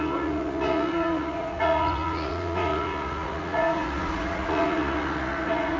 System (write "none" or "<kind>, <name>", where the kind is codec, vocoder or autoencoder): vocoder, Vocos